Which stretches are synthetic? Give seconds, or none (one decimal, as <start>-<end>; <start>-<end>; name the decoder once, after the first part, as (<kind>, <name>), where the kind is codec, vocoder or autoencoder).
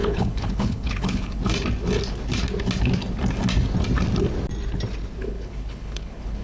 0.0-1.4 (codec, HILCodec); 5.2-6.4